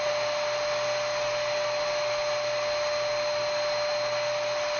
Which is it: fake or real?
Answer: real